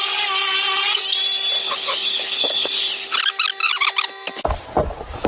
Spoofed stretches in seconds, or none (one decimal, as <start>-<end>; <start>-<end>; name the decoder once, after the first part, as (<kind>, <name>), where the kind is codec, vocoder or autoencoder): 1.6-3.2 (codec, HILCodec)